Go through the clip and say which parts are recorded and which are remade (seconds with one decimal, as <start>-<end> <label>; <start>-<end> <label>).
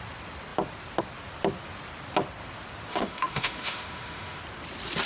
0.0-2.9 recorded; 2.9-4.4 remade; 4.4-5.1 recorded